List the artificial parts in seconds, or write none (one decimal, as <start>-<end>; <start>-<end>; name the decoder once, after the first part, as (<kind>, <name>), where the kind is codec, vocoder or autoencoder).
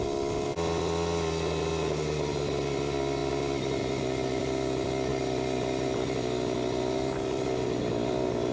none